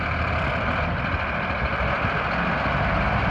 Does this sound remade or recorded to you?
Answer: recorded